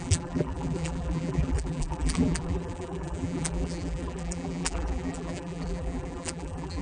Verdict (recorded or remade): remade